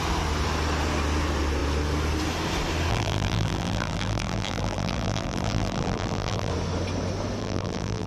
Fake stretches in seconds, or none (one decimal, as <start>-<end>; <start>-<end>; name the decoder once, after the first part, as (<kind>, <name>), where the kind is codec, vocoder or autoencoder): 2.9-6.5 (vocoder, BigVGAN v2); 7.4-8.1